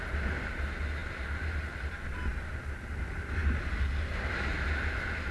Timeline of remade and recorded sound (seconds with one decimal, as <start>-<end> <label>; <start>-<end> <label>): 0.0-5.3 recorded